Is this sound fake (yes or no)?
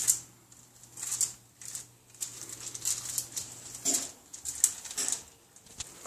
no